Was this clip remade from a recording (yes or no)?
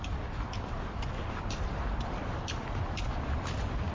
yes